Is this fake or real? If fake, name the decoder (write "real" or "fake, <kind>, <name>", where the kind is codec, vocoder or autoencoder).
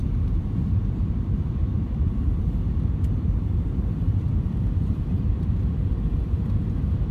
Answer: fake, vocoder, BigVGAN v2